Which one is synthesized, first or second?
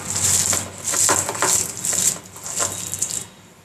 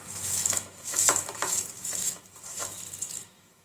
second